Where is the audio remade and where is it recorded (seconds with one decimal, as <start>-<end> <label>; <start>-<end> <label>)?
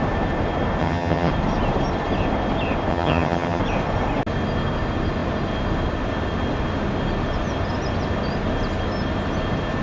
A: 0.0-0.8 recorded; 0.8-1.3 remade; 1.3-2.9 recorded; 2.9-3.6 remade; 3.6-9.8 recorded